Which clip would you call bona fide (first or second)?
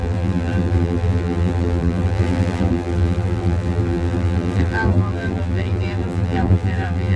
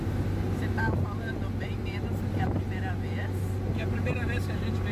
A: second